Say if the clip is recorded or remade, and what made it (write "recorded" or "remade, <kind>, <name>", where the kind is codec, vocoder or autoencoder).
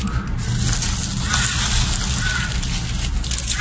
recorded